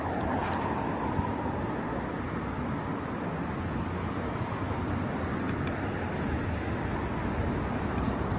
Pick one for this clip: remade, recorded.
recorded